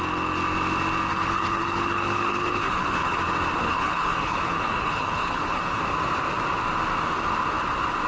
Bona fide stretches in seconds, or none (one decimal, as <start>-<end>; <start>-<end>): 0.0-1.1; 3.2-3.6; 5.8-8.1